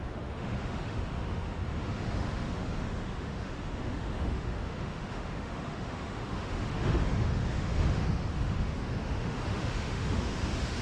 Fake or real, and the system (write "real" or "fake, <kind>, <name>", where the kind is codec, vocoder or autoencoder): fake, autoencoder, DAC-VAE